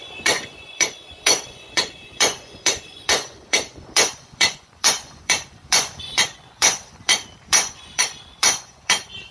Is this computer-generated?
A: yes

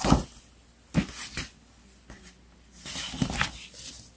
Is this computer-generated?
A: no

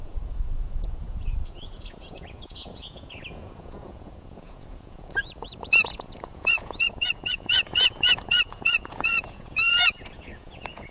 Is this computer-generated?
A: yes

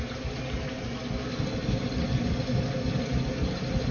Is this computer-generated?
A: no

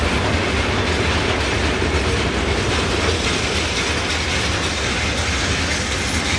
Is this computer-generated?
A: no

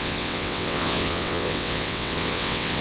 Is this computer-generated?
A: yes